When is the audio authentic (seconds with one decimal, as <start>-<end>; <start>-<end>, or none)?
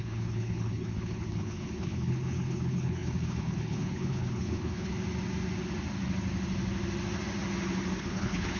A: 4.9-8.0